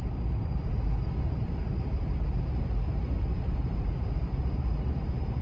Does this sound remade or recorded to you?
remade